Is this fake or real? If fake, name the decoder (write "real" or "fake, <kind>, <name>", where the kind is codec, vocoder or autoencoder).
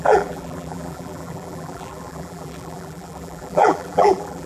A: fake, vocoder, BigVGAN v2